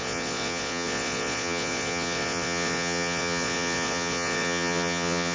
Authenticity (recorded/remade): remade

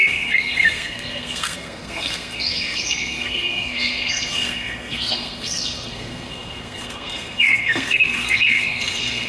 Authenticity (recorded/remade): remade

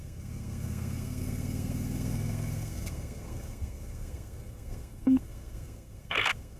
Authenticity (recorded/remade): remade